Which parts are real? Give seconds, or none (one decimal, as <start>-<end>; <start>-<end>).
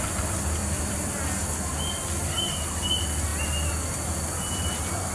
0.0-0.6; 1.3-5.1